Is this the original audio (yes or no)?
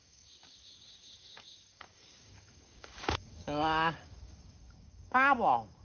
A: no